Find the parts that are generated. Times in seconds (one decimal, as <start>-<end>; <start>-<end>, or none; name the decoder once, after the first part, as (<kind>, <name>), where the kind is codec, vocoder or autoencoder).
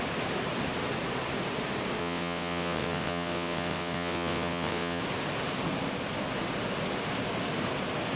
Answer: 2.0-5.0 (vocoder, WaveNeXt)